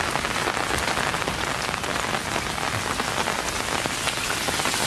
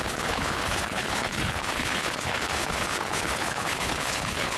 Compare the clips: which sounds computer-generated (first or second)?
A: second